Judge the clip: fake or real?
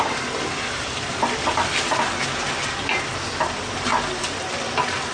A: real